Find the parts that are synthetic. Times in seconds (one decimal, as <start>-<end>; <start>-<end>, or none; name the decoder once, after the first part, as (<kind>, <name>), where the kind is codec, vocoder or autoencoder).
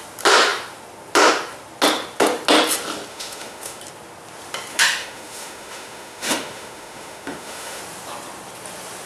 3.1-3.8 (autoencoder, DAC-VAE); 4.7-7.8